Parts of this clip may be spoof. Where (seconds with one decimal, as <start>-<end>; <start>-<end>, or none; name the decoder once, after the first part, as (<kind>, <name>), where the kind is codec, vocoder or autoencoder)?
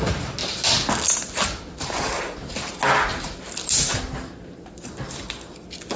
none